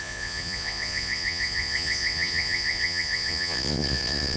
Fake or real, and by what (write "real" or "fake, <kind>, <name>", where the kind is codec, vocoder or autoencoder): fake, vocoder, Vocos